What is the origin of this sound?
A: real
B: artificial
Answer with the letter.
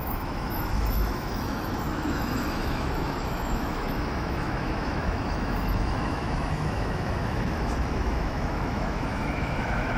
B